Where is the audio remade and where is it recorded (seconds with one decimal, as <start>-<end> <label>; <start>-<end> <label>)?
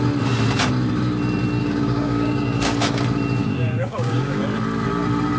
0.0-1.6 recorded; 1.6-3.0 remade; 3.0-3.4 recorded; 3.4-4.4 remade; 4.4-5.4 recorded